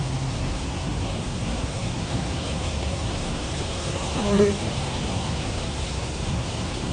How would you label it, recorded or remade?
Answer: remade